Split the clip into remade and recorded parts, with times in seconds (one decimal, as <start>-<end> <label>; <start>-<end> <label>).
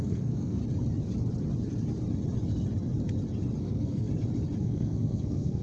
0.0-0.6 remade; 0.6-3.6 recorded; 3.6-4.1 remade; 4.1-4.6 recorded; 4.6-5.6 remade